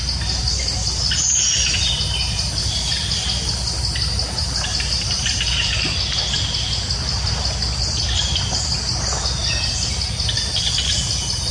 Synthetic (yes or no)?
no